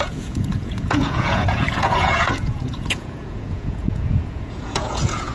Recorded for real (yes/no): no